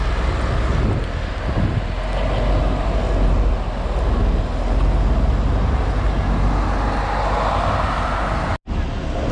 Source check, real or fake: real